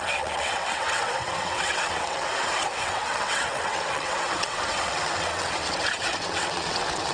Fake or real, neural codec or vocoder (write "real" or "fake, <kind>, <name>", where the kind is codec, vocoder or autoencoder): fake, vocoder, WaveNeXt